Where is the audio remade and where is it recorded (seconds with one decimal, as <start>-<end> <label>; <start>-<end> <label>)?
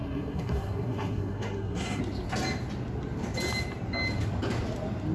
0.0-2.0 remade; 2.0-5.1 recorded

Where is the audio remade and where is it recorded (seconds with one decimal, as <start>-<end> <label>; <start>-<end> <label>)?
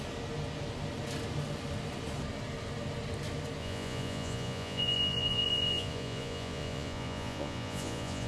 0.0-3.6 recorded; 3.6-8.3 remade